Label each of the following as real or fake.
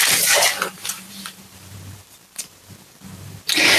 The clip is fake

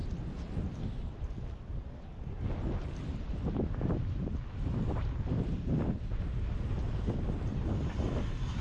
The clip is real